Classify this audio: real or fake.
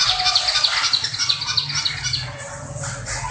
real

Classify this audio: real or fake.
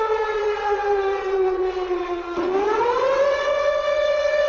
fake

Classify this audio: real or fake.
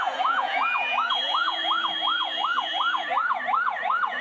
fake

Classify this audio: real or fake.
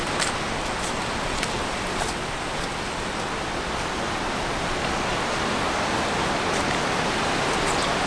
real